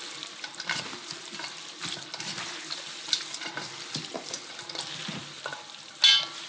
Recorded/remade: recorded